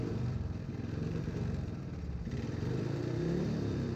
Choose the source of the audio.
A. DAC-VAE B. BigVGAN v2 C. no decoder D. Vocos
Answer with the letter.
B